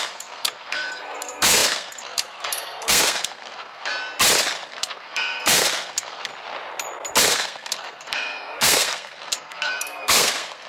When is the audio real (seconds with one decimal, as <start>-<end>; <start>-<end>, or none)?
3.9-4.7; 6.3-7.2